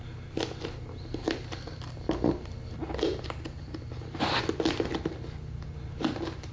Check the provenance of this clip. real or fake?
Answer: real